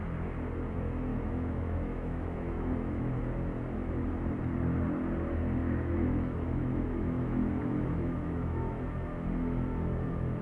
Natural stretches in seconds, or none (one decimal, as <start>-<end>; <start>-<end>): 0.0-1.1; 3.2-5.6; 8.7-10.4